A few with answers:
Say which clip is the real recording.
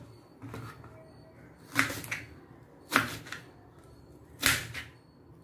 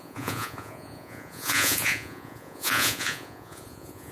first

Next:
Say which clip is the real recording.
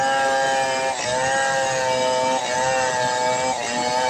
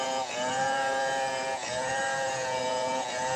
first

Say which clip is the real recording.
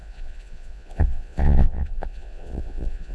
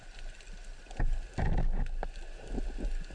second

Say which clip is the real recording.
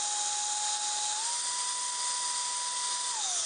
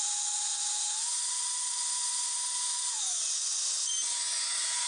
first